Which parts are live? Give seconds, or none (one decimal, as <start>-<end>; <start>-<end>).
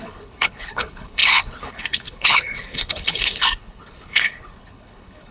none